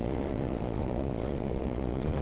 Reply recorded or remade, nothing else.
remade